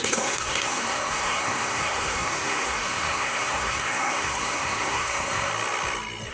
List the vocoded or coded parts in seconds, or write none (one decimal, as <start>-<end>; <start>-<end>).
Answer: 0.0-5.5